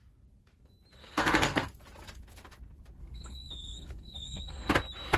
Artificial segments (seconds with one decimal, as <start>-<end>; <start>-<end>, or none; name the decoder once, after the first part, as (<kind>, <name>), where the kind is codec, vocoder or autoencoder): 1.0-1.7 (codec, SNAC); 3.0-4.7

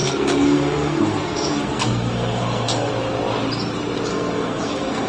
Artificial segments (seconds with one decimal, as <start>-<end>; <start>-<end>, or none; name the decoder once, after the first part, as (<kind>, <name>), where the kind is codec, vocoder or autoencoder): 0.0-2.9 (codec, SNAC); 4.1-5.1